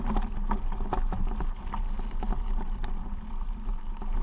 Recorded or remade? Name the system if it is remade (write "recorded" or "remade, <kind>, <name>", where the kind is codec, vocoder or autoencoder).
recorded